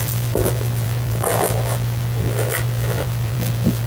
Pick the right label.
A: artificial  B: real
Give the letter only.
A